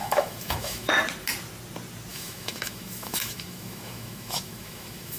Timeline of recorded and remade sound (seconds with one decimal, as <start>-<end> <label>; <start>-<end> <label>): 0.0-0.9 remade; 0.9-2.1 recorded; 2.1-5.2 remade